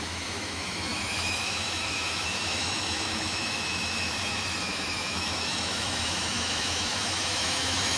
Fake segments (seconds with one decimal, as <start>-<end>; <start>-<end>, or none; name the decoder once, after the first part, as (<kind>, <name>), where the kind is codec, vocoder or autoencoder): 0.0-8.0 (autoencoder, DAC-VAE)